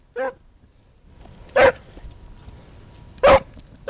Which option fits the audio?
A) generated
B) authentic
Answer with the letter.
B